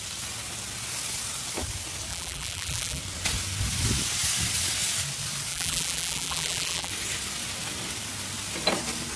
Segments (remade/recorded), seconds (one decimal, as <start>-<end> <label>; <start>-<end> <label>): 0.0-2.1 recorded; 2.1-3.0 remade; 3.0-5.5 recorded; 5.5-6.9 remade; 6.9-9.2 recorded